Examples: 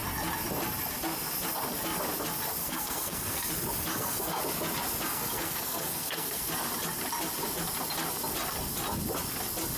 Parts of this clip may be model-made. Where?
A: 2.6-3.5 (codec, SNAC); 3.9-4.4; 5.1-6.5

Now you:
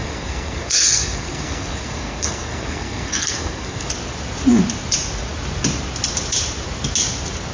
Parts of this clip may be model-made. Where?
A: 0.0-3.9 (codec, SNAC)